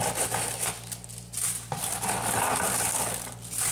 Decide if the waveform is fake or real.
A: real